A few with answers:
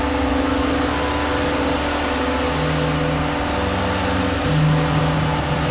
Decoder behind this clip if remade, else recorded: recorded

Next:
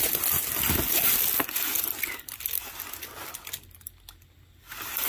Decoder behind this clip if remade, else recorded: recorded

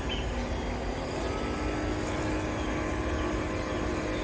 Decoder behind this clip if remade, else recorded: recorded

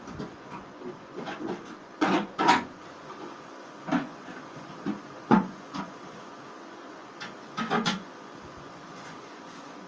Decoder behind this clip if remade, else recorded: remade, vocoder, Vocos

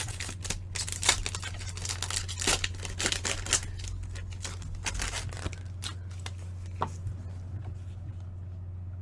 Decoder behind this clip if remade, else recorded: recorded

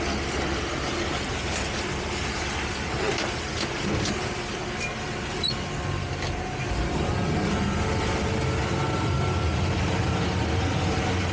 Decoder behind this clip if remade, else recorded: recorded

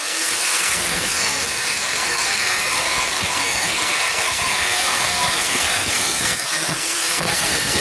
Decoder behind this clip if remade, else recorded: remade, codec, SNAC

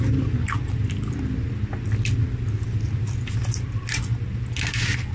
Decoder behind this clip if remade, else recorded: recorded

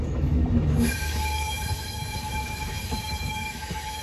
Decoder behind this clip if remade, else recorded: remade, autoencoder, DAC-VAE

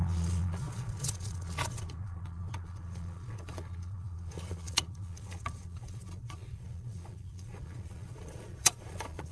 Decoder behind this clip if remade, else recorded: remade, vocoder, Vocos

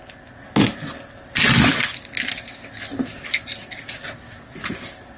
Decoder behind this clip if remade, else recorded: recorded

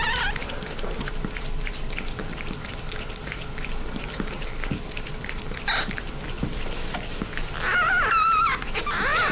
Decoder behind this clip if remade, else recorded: remade, vocoder, BigVGAN v2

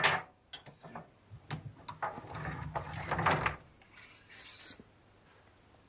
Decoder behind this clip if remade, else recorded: recorded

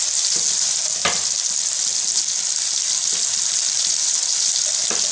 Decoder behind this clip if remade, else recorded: recorded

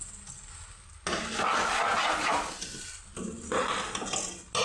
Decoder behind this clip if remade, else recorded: recorded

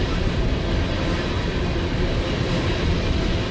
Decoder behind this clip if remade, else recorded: recorded